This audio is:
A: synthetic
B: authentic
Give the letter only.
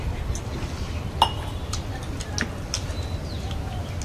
B